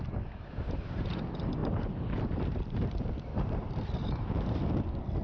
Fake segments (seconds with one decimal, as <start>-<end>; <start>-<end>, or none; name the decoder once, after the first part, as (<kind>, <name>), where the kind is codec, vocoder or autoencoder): 1.6-4.6 (vocoder, BigVGAN v2)